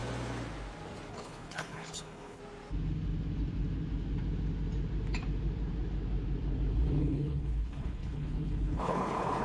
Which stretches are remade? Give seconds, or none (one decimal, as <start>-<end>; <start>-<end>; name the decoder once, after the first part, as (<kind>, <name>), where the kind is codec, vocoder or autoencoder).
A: 1.1-2.4 (codec, HILCodec); 7.0-9.4